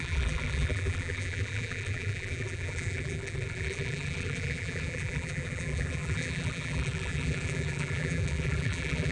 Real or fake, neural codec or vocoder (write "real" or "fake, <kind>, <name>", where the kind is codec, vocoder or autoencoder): fake, vocoder, BigVGAN v2